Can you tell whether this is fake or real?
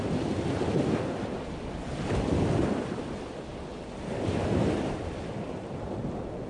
real